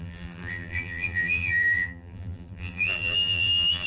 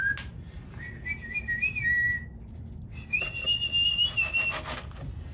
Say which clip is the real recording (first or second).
second